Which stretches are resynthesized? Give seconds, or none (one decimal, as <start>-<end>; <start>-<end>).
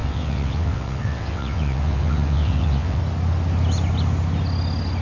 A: 0.0-3.0